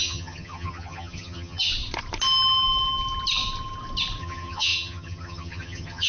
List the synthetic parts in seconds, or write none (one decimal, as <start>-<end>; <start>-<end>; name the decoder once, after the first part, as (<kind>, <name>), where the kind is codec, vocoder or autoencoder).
0.0-1.7 (vocoder, HiFi-GAN); 4.2-6.1